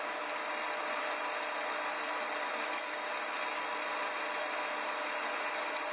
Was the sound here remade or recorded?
recorded